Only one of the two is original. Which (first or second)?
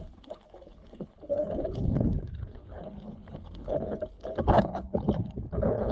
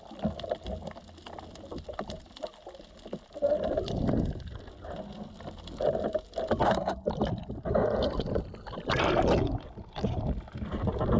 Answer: second